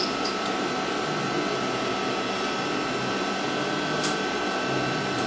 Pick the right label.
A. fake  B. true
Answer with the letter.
B